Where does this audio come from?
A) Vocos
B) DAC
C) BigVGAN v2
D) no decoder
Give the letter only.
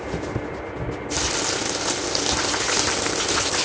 D